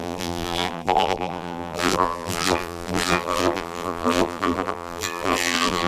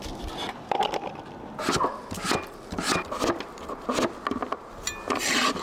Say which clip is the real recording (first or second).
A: second